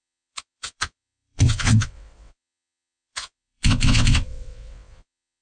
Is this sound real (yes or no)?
no